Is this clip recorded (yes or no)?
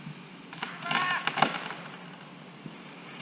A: yes